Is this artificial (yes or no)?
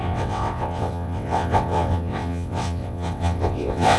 yes